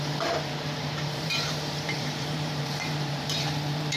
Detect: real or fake fake